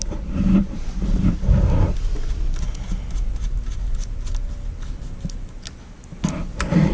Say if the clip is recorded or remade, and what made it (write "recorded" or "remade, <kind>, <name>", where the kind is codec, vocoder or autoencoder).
recorded